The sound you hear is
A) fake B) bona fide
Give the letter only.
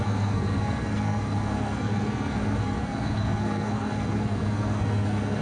A